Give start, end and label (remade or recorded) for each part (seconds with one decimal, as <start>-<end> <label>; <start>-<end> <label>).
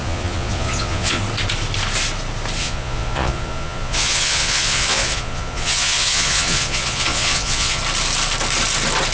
0.0-1.2 remade; 1.2-2.6 recorded; 2.6-7.8 remade; 7.8-9.1 recorded